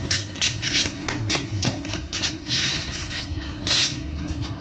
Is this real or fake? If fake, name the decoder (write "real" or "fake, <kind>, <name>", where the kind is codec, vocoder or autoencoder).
fake, codec, SNAC